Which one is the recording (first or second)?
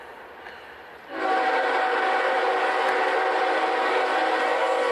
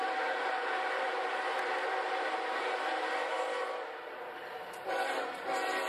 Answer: first